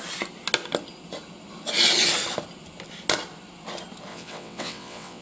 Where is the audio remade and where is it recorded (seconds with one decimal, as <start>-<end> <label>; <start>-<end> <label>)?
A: 0.0-4.1 recorded; 4.1-5.2 remade